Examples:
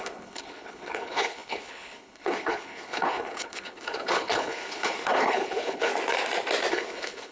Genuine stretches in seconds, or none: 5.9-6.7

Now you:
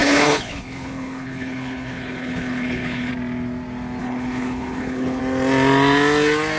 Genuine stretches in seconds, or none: 3.1-4.0; 5.2-6.6